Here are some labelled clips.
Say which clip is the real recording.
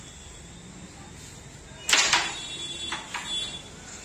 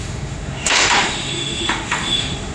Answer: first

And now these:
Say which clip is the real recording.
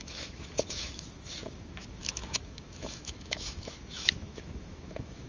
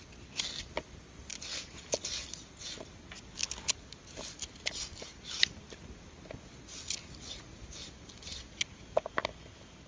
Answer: second